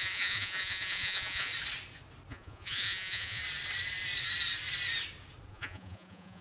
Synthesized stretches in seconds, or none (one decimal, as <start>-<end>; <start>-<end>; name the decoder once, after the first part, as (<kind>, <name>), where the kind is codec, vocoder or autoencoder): 0.0-1.5 (vocoder, Vocos); 2.3-3.4; 5.5-6.4